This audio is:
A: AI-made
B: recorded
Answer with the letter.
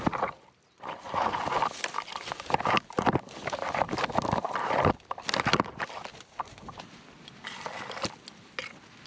B